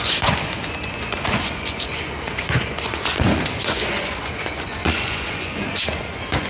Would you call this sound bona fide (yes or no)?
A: no